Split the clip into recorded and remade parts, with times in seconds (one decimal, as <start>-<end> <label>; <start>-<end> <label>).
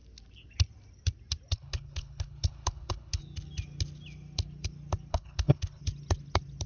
0.0-1.5 recorded; 1.5-3.2 remade; 3.2-5.1 recorded; 5.1-5.8 remade; 5.8-6.7 recorded